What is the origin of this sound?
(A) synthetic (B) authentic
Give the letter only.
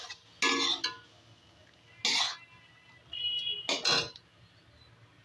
B